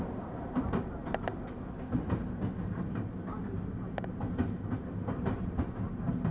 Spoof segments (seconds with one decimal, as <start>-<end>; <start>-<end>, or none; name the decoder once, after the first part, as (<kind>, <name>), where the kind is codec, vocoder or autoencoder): 0.0-1.0 (vocoder, BigVGAN v2); 4.8-6.3